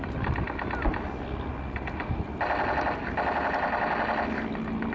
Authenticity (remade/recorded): recorded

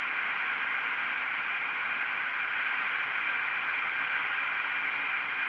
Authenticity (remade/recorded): recorded